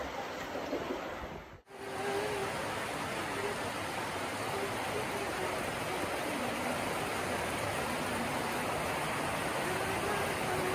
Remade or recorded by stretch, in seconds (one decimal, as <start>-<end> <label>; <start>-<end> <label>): 0.0-10.7 recorded